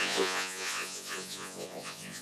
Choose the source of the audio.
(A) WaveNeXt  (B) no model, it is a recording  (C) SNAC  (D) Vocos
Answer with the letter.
D